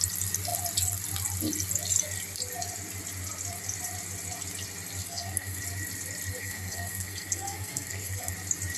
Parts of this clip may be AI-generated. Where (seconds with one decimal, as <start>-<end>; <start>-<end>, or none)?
5.0-5.6; 6.4-8.3